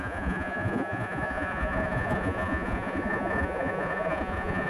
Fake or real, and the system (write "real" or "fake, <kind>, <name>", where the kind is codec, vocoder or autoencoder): fake, vocoder, Vocos